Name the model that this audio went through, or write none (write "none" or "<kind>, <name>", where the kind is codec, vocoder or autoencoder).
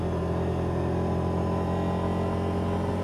none